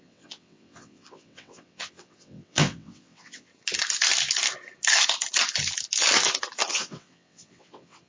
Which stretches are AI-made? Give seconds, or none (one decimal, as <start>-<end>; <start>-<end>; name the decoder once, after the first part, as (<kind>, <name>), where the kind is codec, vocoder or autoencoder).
0.0-3.5 (vocoder, WaveNeXt); 6.7-8.1